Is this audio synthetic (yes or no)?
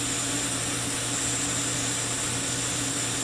no